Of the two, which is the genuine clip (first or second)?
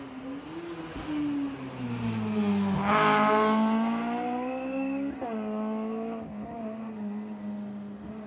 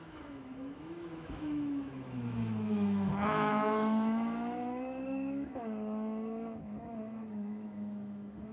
first